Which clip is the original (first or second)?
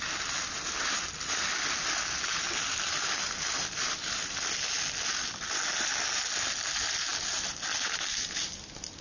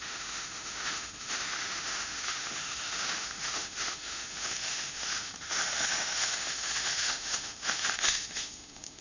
first